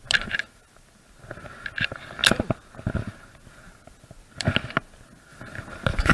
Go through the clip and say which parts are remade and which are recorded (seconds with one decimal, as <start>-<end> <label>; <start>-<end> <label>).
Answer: 0.0-6.1 recorded